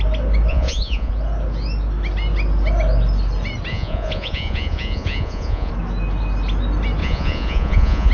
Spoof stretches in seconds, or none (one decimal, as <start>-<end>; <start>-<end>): 0.5-1.1; 3.7-5.7; 7.0-8.1